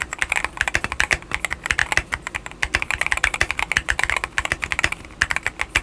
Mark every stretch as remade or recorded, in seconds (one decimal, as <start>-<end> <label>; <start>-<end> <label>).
0.0-5.8 recorded